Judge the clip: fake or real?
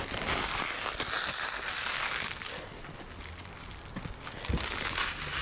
real